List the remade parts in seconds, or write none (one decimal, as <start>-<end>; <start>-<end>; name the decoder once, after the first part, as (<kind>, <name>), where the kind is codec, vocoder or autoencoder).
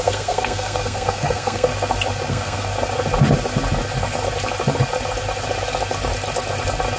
0.0-1.7 (codec, SNAC); 2.3-2.7